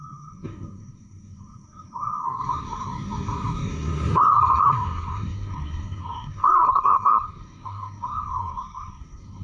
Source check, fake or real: fake